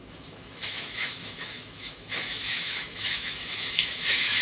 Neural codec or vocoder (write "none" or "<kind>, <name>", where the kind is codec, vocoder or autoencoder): autoencoder, DAC-VAE